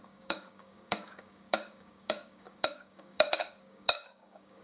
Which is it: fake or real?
fake